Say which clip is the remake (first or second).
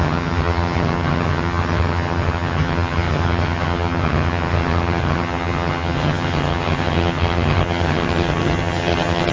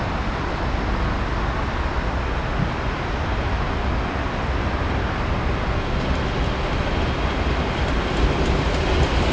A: first